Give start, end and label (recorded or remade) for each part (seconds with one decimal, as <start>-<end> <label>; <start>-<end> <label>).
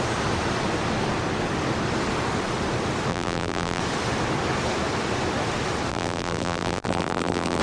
0.0-3.1 recorded; 3.1-3.8 remade; 3.8-5.9 recorded; 5.9-7.6 remade